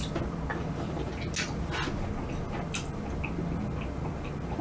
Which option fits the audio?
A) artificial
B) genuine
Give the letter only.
B